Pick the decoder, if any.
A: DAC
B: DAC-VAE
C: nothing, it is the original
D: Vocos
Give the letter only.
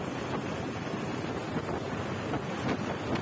C